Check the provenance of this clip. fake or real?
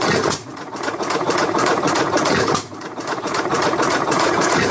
fake